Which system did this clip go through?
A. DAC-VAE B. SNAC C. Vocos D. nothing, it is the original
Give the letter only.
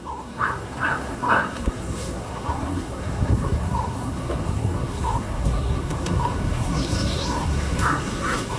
B